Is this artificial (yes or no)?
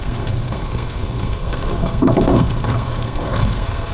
yes